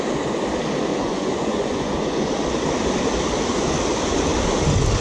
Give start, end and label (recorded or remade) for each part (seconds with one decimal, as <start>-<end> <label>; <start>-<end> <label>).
0.0-0.9 recorded; 0.9-2.3 remade; 2.3-5.0 recorded